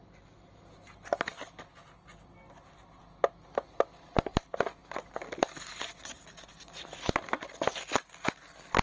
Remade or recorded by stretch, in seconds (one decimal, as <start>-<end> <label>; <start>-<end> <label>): 0.0-8.8 recorded